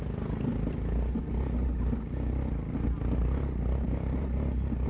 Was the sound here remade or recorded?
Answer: recorded